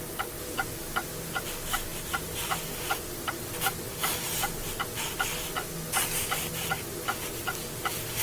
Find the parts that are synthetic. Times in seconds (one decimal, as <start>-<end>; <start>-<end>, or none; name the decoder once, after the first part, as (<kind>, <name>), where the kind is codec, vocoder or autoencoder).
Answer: none